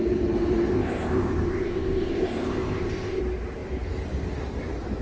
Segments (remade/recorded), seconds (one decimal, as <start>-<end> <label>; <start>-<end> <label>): 0.0-0.7 recorded; 0.7-3.2 remade; 3.2-5.0 recorded